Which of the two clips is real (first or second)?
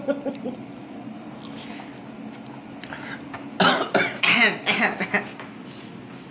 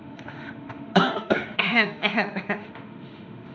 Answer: first